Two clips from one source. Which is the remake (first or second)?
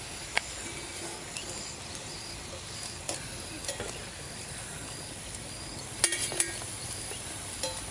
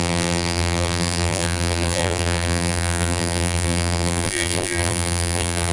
second